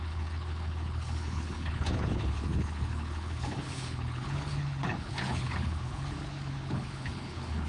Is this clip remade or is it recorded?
remade